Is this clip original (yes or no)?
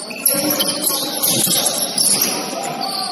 yes